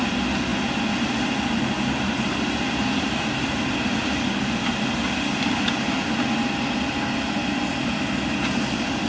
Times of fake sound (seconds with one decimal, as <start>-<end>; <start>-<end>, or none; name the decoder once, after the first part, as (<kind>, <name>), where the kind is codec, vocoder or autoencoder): none

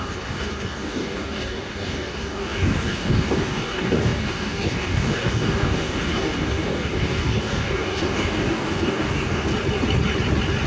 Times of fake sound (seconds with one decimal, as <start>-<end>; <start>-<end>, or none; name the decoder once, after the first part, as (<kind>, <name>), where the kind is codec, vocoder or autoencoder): 0.0-9.5 (codec, DAC)

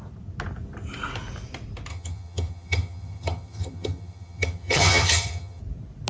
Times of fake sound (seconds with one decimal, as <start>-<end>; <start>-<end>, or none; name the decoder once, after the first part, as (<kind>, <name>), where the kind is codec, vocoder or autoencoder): 1.9-5.6 (vocoder, HiFi-GAN)

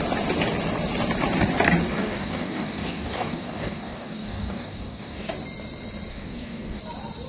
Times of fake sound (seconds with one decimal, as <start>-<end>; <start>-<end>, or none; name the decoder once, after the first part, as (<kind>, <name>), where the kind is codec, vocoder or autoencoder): 1.9-5.3 (codec, DAC); 6.1-6.8